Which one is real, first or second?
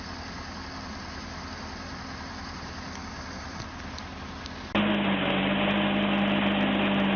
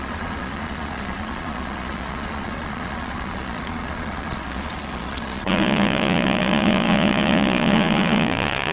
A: first